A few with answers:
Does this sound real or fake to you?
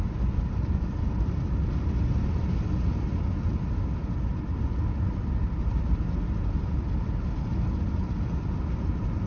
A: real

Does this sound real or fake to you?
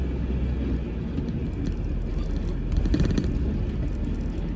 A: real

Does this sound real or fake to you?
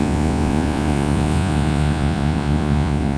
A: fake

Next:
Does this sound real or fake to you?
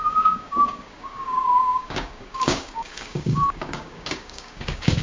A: fake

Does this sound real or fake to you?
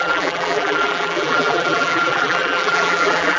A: fake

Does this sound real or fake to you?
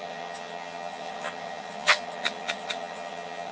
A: fake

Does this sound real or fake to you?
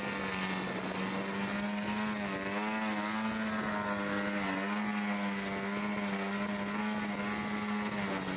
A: real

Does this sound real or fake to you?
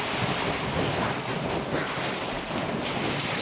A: real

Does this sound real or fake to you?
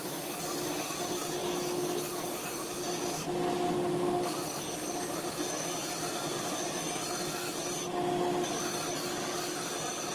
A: real